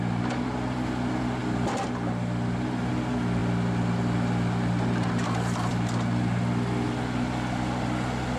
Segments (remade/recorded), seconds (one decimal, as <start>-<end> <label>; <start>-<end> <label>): 0.0-8.4 recorded